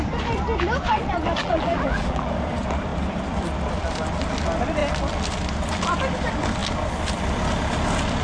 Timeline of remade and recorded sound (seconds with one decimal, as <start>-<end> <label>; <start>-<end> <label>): 0.0-1.4 recorded; 1.4-2.3 remade; 2.3-8.2 recorded